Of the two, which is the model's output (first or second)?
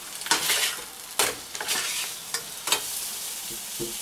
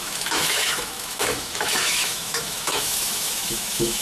second